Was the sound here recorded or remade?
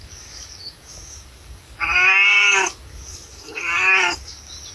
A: remade